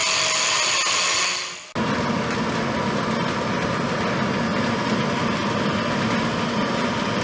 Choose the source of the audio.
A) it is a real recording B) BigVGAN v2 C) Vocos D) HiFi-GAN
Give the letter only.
A